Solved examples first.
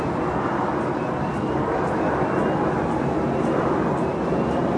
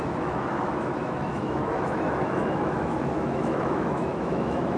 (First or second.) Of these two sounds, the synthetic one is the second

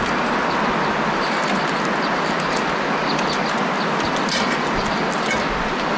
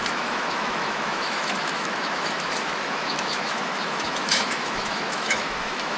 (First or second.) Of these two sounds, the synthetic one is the second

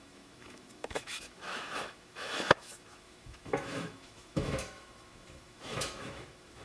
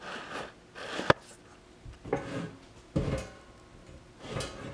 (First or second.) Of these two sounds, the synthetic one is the first